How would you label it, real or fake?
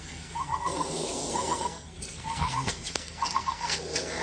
fake